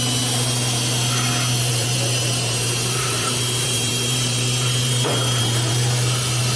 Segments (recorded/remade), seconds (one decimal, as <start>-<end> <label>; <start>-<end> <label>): 0.0-1.7 recorded; 1.7-5.7 remade; 5.7-6.6 recorded